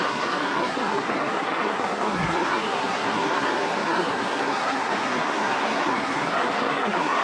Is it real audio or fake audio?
fake